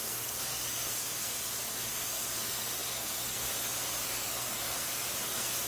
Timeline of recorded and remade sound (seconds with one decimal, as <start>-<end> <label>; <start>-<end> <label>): 0.0-5.7 remade